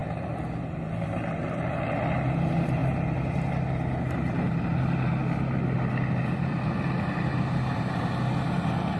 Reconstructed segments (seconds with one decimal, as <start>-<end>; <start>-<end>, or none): 0.0-5.2; 6.2-9.0